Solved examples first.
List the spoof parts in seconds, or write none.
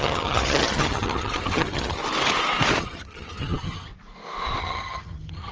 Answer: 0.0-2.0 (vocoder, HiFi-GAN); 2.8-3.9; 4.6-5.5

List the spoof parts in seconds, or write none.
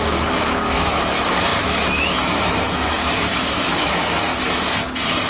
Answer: 0.0-4.3 (autoencoder, DAC-VAE)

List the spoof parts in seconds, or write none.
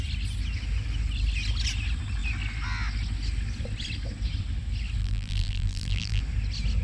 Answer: 5.0-6.2 (vocoder, BigVGAN v2)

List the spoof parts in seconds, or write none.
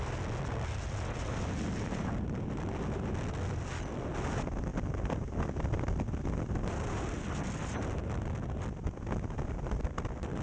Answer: none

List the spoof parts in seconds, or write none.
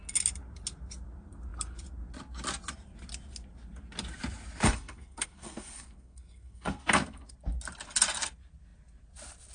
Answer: 4.6-7.3 (codec, SNAC)